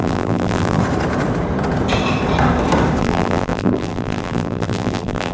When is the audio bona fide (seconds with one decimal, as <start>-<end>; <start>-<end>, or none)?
0.8-3.0

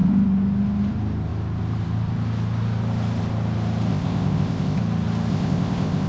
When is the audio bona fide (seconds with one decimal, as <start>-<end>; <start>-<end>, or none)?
0.0-3.9; 4.8-5.3